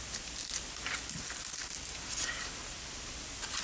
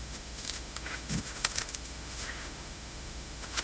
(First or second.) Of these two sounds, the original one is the first